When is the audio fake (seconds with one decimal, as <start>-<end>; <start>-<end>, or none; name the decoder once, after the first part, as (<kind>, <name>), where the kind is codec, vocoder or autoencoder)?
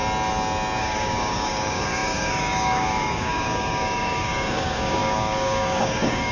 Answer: 0.8-6.3 (codec, DAC)